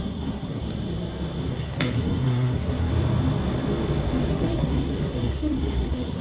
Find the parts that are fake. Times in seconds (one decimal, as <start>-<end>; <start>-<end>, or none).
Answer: 0.0-0.6; 1.5-2.9; 4.3-6.2